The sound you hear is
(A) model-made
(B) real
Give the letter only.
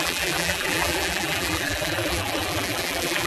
A